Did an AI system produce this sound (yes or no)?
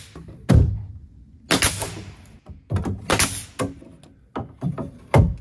no